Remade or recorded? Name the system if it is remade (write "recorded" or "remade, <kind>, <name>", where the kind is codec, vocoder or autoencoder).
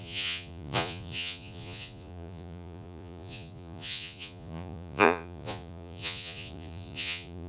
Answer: remade, vocoder, Vocos